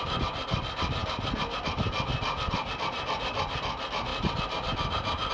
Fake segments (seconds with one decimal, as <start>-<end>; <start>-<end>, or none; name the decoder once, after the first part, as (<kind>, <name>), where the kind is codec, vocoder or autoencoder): none